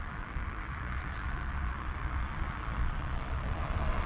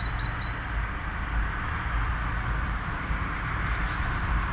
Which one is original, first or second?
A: second